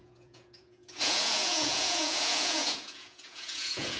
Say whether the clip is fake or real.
fake